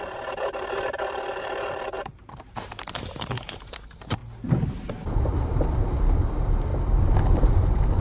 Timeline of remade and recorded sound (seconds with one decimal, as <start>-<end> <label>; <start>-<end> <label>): 0.0-4.2 remade; 4.2-4.9 recorded; 4.9-6.7 remade; 6.7-7.4 recorded; 7.4-8.0 remade